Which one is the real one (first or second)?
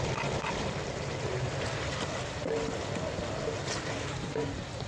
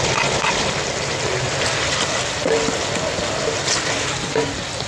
second